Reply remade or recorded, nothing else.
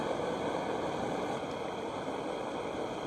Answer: recorded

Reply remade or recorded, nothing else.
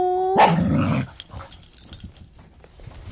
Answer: recorded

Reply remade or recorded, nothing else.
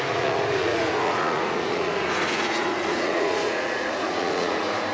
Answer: remade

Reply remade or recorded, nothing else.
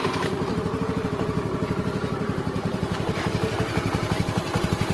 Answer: remade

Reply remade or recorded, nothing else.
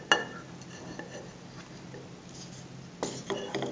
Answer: recorded